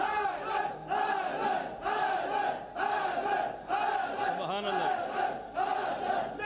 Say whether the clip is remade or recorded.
recorded